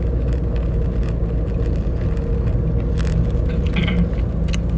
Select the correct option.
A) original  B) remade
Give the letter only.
A